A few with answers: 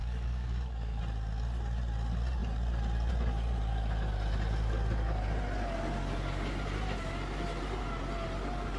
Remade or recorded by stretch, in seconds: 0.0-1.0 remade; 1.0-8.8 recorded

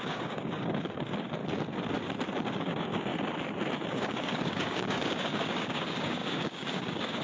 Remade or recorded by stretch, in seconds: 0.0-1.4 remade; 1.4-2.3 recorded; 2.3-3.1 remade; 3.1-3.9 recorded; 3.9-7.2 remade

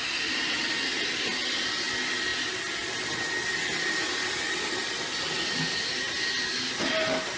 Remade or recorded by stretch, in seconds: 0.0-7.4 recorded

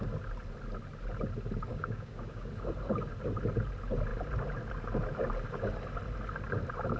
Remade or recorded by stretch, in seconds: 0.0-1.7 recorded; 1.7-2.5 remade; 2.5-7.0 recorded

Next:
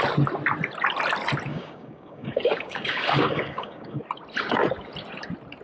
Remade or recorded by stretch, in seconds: 0.0-1.5 recorded; 1.5-4.0 remade; 4.0-5.6 recorded